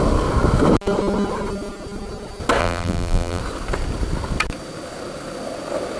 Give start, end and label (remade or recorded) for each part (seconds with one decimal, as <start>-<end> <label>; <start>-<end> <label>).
0.0-2.6 recorded; 2.6-3.4 remade; 3.4-6.0 recorded